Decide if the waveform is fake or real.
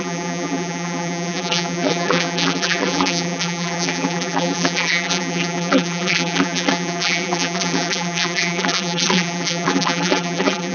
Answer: fake